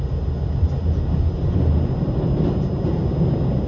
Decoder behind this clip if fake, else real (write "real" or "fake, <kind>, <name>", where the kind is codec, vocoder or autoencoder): real